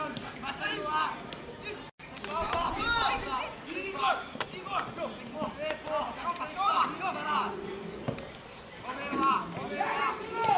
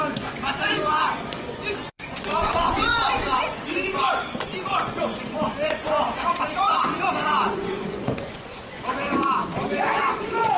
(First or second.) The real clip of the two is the first